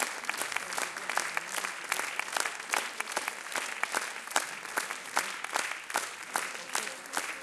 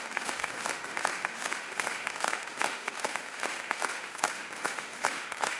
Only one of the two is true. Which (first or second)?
first